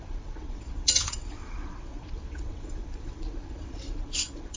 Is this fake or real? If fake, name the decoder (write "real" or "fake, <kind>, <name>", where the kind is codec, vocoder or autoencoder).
fake, vocoder, WaveNeXt